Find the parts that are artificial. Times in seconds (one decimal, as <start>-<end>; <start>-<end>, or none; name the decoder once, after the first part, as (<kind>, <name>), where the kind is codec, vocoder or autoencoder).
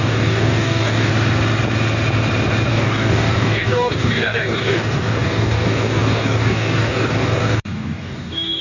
0.0-1.1 (codec, DAC); 2.7-8.6